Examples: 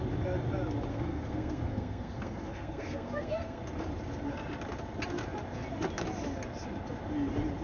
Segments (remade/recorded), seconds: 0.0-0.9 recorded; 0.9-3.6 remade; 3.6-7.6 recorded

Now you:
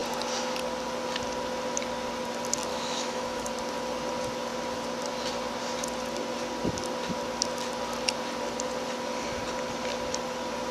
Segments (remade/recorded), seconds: 0.0-2.7 recorded; 2.7-3.5 remade; 3.5-10.7 recorded

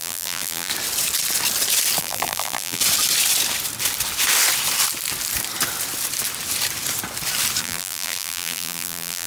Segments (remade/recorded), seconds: 0.0-0.7 remade; 0.7-2.0 recorded; 2.0-2.8 remade; 2.8-7.6 recorded; 7.6-9.3 remade